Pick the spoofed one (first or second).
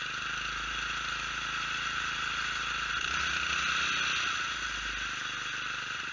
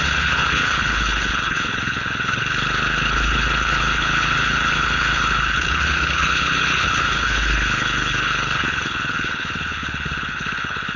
second